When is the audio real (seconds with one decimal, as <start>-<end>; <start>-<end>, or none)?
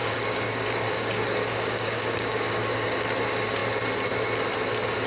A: 3.1-5.1